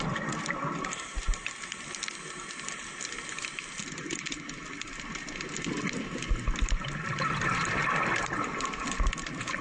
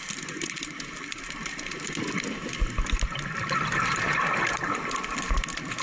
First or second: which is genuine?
first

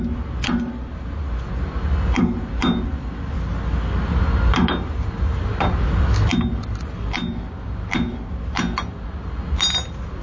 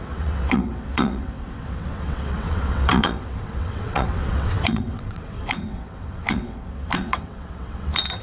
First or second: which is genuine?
first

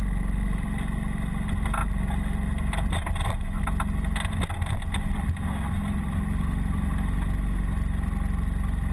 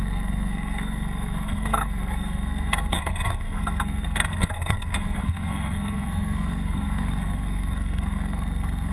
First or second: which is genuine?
first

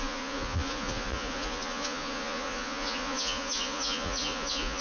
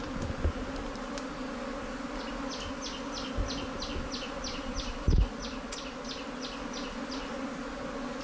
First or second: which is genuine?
second